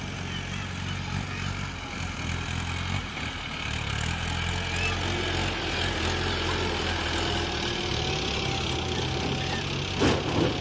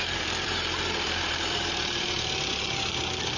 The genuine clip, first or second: first